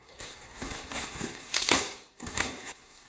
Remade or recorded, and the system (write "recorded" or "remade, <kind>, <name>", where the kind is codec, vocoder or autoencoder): remade, codec, SNAC